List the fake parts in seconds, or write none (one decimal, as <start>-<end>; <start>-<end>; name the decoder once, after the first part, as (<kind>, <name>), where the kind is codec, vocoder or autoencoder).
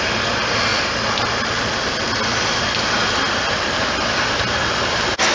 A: none